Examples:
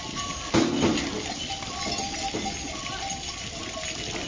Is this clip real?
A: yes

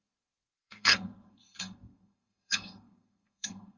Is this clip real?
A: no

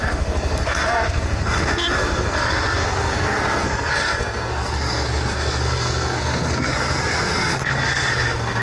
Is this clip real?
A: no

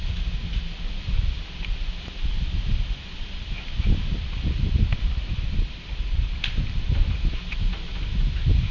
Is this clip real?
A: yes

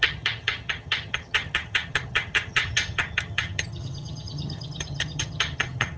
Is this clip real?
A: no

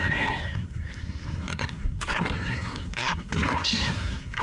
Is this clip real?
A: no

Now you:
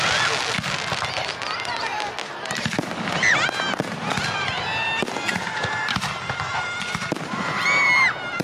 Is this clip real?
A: yes